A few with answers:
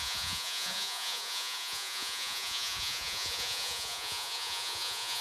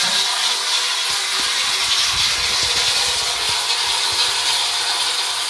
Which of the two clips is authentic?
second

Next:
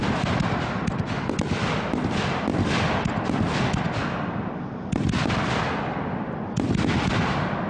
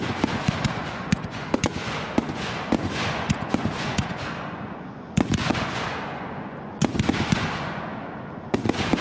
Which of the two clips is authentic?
first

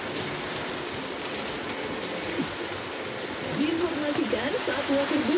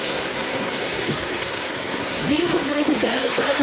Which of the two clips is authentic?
first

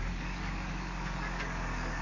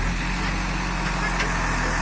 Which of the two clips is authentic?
second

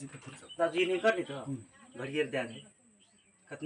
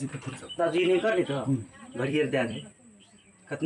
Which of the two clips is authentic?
first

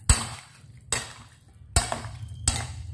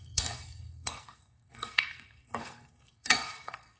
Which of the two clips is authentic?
first